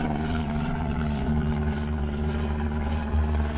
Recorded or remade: remade